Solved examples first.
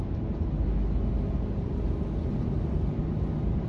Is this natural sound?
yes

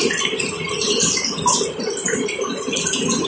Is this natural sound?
yes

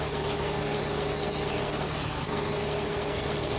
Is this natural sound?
no